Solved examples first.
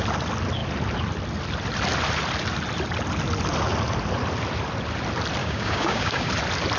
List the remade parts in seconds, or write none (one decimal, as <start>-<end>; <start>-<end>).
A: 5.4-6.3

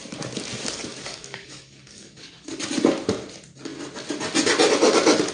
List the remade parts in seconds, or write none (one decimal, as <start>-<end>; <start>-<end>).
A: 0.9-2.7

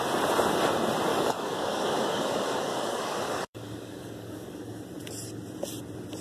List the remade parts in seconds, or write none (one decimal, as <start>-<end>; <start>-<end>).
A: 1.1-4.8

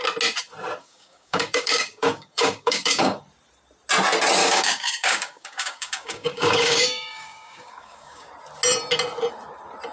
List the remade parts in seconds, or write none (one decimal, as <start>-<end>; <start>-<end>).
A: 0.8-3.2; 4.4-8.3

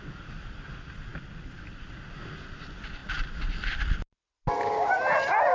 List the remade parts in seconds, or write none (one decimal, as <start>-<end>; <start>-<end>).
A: none

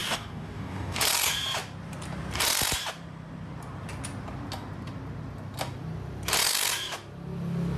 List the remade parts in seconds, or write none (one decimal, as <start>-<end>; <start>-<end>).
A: 0.0-1.0

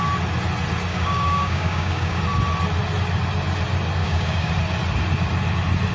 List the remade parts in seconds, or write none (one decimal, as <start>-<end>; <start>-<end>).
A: 0.9-2.2; 4.0-4.5